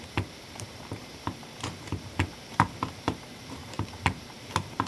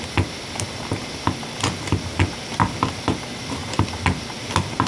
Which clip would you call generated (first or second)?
first